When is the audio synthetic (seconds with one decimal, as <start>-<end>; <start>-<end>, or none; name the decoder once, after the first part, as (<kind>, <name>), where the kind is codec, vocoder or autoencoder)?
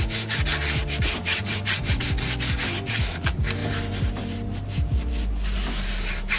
0.5-2.0 (vocoder, BigVGAN v2); 3.6-6.4